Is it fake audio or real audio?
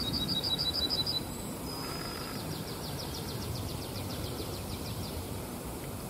fake